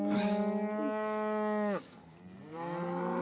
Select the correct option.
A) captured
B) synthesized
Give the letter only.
A